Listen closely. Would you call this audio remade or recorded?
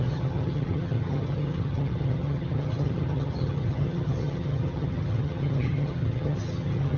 remade